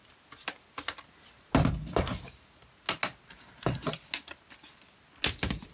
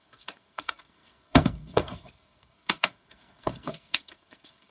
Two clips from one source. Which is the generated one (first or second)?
second